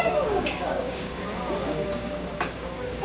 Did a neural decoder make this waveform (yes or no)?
yes